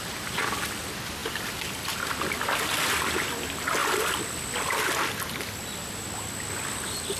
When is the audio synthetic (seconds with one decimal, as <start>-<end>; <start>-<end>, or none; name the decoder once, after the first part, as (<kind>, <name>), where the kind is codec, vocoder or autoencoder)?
none